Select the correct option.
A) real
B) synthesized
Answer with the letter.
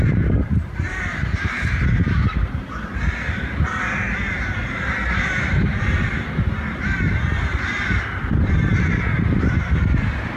B